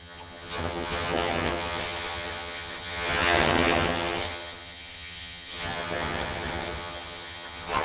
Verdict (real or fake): fake